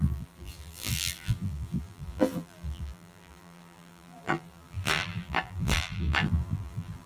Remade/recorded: remade